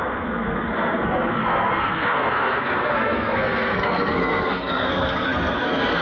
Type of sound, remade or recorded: remade